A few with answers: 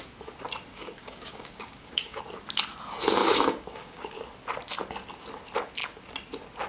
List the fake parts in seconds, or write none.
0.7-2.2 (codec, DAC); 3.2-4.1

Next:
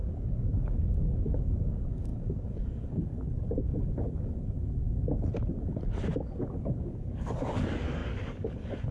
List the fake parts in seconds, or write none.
0.0-3.1 (codec, DAC); 6.8-8.9

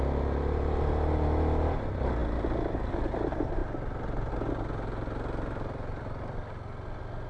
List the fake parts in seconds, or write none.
none

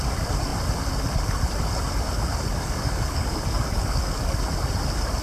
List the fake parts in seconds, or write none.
2.5-4.4 (codec, DAC)

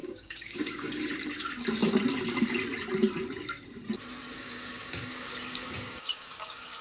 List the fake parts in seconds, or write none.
0.0-1.0 (codec, DAC); 4.4-6.8